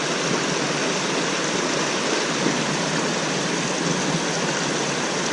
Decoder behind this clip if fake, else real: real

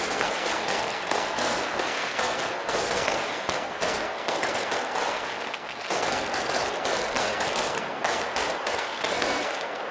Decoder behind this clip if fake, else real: fake, codec, SNAC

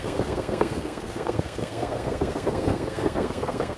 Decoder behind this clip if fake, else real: fake, codec, SNAC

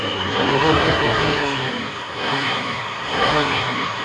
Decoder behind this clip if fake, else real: fake, codec, SNAC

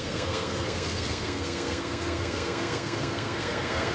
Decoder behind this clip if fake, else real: fake, codec, SNAC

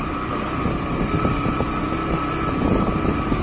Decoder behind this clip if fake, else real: real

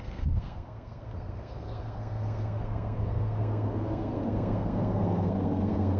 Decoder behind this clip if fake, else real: fake, codec, SNAC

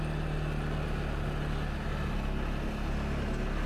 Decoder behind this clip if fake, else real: real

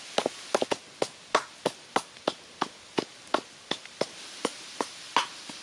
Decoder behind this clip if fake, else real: real